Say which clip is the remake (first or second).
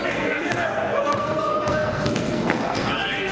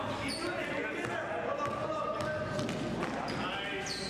first